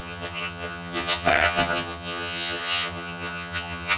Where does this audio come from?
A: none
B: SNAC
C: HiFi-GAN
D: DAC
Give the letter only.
C